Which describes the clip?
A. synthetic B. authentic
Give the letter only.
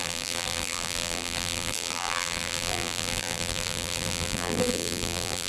A